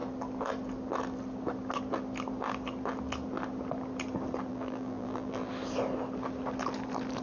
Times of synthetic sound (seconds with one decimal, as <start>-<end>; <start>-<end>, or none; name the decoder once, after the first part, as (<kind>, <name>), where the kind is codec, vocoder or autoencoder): 4.5-5.5 (vocoder, BigVGAN v2)